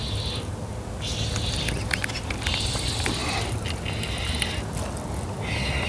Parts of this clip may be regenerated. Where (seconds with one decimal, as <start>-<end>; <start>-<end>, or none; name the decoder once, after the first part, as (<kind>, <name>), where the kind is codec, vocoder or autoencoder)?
none